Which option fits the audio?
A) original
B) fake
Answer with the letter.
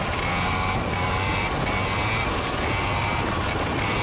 A